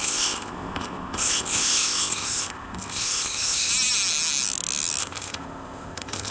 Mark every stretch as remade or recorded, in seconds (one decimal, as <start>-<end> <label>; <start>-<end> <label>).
0.0-3.7 remade; 3.7-5.0 recorded; 5.0-6.3 remade